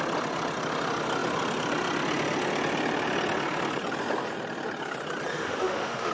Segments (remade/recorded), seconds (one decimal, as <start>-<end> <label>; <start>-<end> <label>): 0.0-5.3 recorded; 5.3-6.1 remade